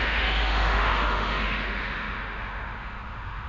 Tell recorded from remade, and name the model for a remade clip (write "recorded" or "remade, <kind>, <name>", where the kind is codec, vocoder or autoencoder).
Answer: remade, autoencoder, DAC-VAE